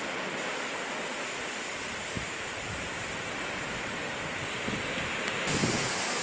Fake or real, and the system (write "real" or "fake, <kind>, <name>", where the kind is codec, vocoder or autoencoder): real